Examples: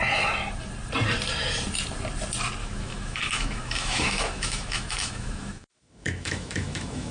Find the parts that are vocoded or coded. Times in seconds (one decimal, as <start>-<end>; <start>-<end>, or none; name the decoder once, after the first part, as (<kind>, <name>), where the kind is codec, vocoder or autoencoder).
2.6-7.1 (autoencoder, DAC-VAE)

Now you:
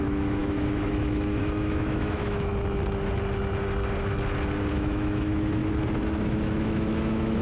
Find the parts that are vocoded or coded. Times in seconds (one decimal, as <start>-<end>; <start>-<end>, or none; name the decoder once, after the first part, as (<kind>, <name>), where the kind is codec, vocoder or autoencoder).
0.0-2.5 (autoencoder, DAC-VAE); 4.7-5.6; 6.2-7.4

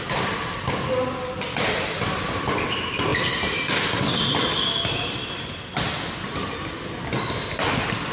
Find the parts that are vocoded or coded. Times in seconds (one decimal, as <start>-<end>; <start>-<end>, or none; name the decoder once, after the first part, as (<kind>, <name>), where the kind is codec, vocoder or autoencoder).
none

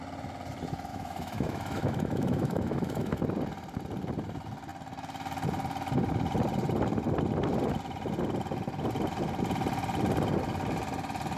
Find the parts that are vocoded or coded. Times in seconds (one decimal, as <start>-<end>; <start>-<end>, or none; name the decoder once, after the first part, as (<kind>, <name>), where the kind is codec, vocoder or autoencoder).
0.9-3.2 (autoencoder, DAC-VAE)

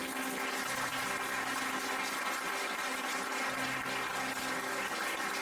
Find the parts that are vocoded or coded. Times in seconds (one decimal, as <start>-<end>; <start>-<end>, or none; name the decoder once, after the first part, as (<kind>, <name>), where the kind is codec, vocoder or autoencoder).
none

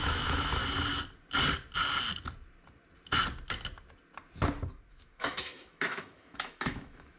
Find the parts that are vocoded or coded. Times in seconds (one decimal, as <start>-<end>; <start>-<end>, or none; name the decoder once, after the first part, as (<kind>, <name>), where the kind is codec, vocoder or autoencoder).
0.0-0.6 (autoencoder, DAC-VAE); 4.9-7.2

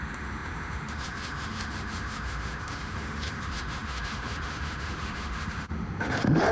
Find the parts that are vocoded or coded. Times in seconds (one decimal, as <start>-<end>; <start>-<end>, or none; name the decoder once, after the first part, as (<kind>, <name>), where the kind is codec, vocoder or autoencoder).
0.0-6.5 (autoencoder, DAC-VAE)